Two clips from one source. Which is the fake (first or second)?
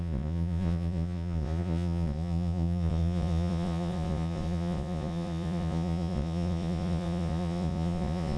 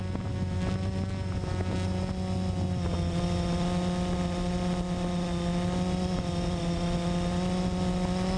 first